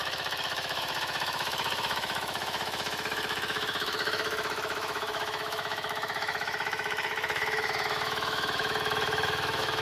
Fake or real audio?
fake